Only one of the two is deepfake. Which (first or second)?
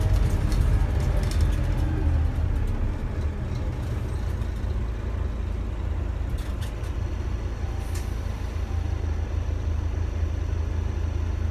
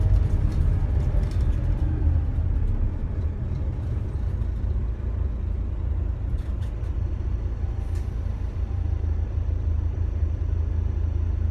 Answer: second